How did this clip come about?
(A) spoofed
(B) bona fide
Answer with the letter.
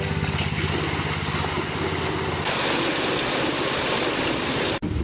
B